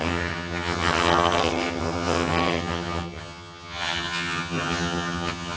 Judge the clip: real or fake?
fake